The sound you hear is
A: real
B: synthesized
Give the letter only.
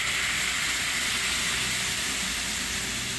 A